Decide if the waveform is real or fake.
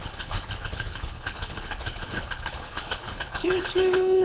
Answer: fake